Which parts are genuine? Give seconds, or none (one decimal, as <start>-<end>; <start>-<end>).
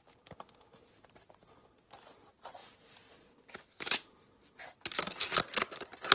0.0-6.1